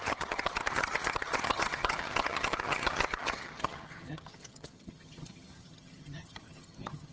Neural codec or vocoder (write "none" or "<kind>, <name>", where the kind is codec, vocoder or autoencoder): vocoder, HiFi-GAN